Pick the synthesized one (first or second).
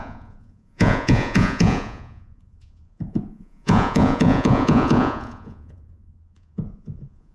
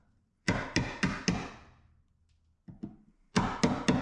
first